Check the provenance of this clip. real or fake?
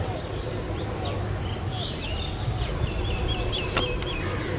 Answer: real